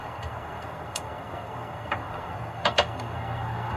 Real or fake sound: fake